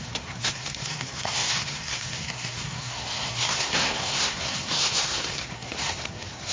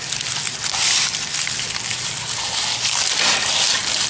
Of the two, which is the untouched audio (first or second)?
second